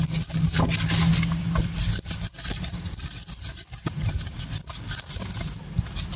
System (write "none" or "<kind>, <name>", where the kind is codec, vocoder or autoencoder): none